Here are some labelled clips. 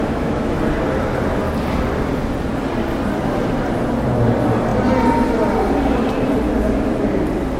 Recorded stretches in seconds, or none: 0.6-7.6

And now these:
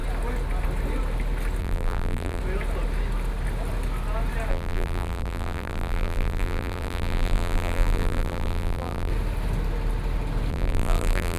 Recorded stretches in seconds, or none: 0.0-1.6; 2.4-4.5; 9.1-10.5

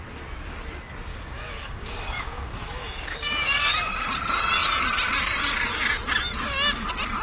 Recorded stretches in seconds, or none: 0.0-1.1; 3.9-7.2

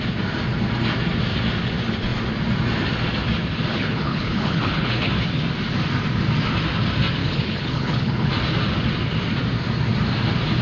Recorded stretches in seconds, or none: 0.0-3.7; 5.1-7.2; 8.3-10.6

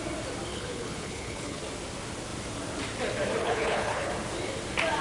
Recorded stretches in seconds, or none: 0.0-0.5; 1.6-3.4; 4.1-5.0

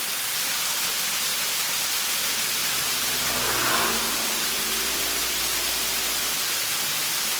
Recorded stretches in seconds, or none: 0.0-2.6; 3.2-5.2; 5.8-7.4